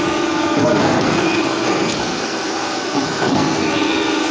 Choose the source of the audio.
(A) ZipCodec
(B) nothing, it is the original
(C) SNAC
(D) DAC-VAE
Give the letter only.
C